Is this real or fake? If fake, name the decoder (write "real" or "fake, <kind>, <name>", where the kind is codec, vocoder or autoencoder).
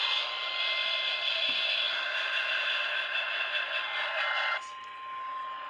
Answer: real